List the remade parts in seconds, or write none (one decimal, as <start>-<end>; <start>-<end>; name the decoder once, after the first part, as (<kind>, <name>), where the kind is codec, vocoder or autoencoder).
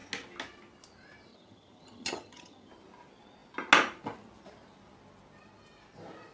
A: 1.3-2.7 (vocoder, HiFi-GAN)